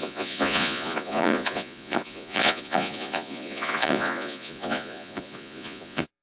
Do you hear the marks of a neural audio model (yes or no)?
yes